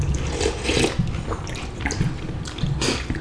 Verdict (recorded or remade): recorded